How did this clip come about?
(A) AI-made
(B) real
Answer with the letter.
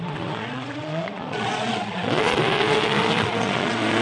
A